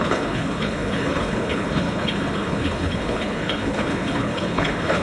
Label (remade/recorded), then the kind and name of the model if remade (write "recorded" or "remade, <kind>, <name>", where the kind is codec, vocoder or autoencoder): remade, codec, HILCodec